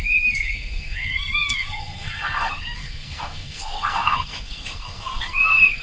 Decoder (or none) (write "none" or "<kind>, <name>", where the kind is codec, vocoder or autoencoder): codec, SNAC